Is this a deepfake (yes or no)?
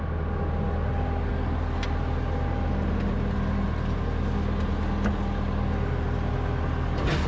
no